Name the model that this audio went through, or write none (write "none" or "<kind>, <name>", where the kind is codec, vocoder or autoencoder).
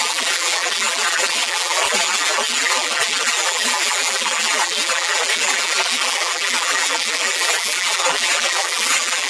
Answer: vocoder, BigVGAN v2